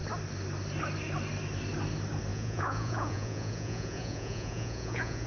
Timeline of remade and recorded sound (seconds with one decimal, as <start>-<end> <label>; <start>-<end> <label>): 0.0-2.3 recorded; 2.3-5.3 remade

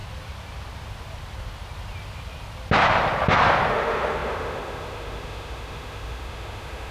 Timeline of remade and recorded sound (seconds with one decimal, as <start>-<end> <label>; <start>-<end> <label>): 0.0-3.7 recorded; 3.7-6.9 remade